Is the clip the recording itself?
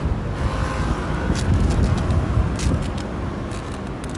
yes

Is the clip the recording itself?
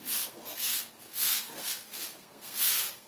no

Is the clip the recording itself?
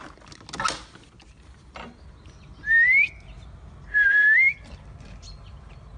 yes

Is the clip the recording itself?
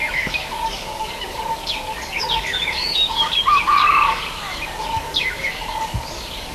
no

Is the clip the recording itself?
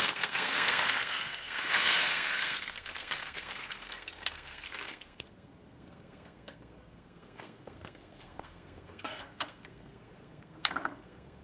no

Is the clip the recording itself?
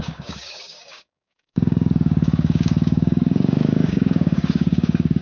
no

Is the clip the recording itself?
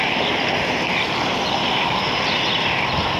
yes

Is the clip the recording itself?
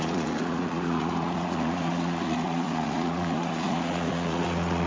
no